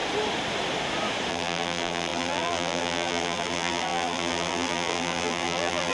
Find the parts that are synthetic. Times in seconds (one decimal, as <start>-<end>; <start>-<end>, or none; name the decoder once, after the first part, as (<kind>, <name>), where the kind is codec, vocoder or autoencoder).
1.3-5.9 (vocoder, BigVGAN v2)